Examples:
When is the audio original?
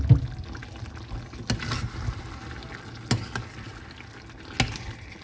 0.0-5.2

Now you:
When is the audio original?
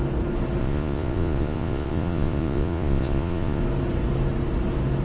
0.0-0.6; 3.6-5.0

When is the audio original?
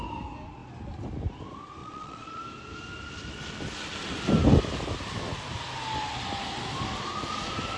0.0-1.8; 2.4-7.8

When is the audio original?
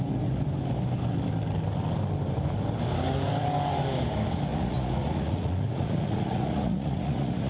0.0-4.5